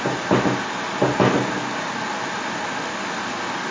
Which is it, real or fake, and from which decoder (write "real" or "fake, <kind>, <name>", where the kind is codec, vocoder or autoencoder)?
real